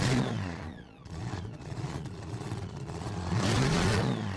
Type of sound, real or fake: fake